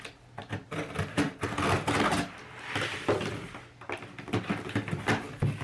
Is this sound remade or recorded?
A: recorded